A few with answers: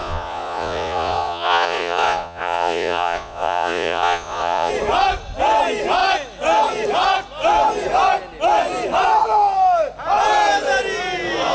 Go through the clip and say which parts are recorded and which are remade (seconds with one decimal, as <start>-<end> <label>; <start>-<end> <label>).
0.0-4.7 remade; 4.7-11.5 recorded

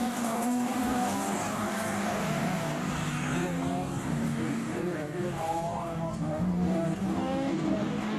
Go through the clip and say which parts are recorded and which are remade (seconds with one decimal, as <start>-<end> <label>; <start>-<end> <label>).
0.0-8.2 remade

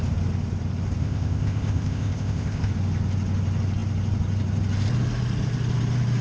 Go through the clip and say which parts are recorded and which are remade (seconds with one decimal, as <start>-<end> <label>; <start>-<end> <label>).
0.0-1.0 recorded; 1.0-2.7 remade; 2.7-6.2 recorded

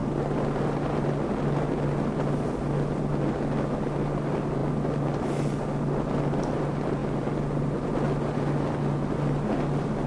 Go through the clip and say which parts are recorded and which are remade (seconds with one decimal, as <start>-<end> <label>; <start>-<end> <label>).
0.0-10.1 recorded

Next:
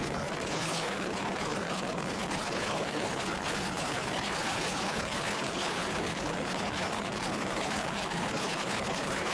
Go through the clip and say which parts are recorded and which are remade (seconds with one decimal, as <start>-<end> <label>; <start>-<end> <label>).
0.0-9.3 remade